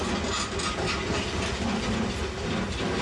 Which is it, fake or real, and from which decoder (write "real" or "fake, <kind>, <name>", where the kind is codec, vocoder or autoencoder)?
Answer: real